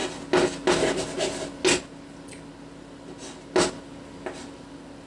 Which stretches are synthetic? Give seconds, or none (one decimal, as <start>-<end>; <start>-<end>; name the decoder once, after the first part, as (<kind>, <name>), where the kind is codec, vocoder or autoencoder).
none